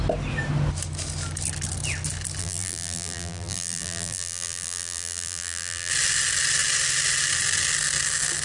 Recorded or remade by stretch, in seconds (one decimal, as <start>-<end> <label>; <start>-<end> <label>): 0.0-2.4 recorded; 2.4-5.9 remade; 5.9-8.4 recorded